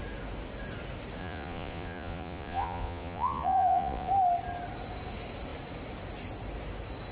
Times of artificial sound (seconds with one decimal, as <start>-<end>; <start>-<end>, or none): 1.2-4.1